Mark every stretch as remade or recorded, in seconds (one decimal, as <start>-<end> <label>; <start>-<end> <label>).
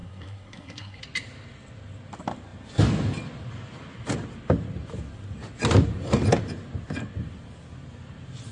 0.0-1.0 remade; 1.0-8.5 recorded